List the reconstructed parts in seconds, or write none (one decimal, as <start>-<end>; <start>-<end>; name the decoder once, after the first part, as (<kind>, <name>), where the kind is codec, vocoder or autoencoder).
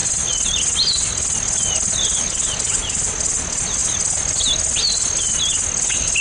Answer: none